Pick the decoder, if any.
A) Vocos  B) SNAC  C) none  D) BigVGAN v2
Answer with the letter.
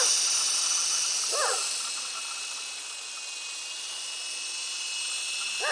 C